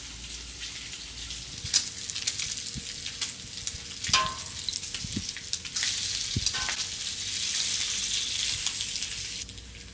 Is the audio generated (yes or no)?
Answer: no